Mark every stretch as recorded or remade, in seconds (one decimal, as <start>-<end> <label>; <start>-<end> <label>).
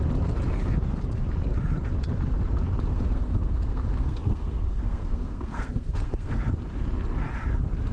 0.0-2.9 recorded; 2.9-6.4 remade; 6.4-7.9 recorded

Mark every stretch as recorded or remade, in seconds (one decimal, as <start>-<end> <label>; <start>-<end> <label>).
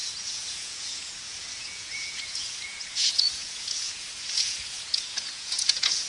0.0-6.1 remade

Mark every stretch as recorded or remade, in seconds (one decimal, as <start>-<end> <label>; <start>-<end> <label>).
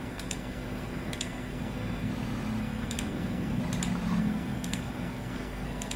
0.0-2.1 remade; 2.1-2.6 recorded; 2.6-3.6 remade; 3.6-4.2 recorded; 4.2-6.0 remade